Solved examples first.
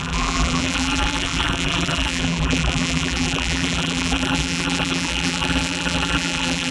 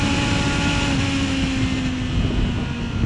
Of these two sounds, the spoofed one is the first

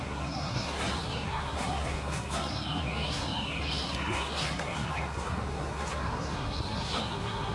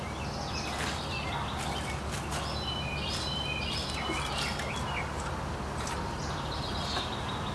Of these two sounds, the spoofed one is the first